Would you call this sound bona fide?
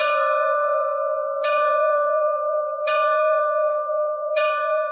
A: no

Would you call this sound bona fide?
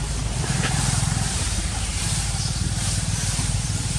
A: no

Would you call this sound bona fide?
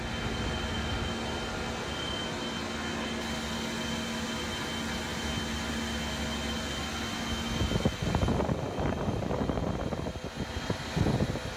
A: yes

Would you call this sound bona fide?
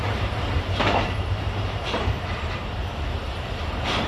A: no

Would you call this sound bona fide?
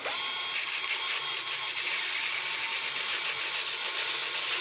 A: no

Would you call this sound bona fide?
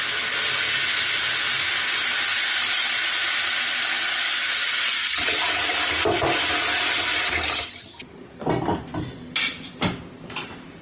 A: yes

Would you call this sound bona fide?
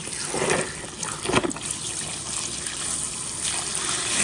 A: yes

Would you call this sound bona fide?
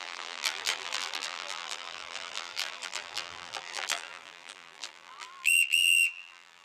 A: no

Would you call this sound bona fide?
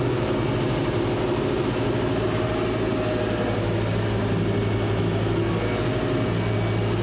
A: yes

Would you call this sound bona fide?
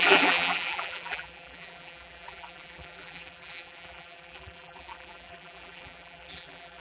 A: no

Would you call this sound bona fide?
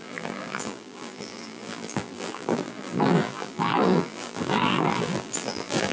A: no